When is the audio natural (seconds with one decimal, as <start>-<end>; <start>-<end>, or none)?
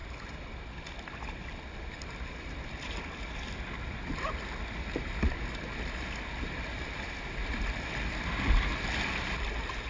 0.0-9.9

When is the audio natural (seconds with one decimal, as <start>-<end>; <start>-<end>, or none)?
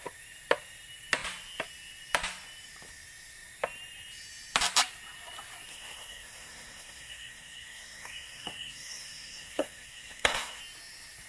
0.0-5.7; 10.6-11.3